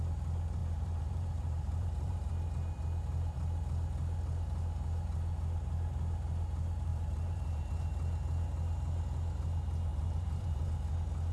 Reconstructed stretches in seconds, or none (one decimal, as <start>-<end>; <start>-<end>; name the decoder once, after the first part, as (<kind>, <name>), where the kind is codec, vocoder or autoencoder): 0.6-2.3 (vocoder, BigVGAN v2); 6.9-7.7; 9.9-10.9